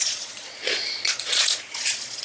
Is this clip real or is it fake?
fake